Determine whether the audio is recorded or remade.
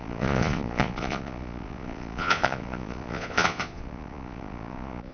remade